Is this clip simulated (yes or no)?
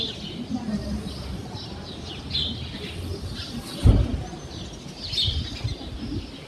no